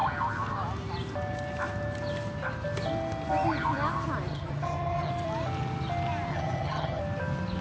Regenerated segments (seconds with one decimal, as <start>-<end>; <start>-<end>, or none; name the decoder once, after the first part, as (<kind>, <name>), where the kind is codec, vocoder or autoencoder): 4.3-5.1 (vocoder, HiFi-GAN); 6.3-7.0